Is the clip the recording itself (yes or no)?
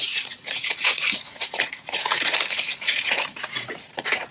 no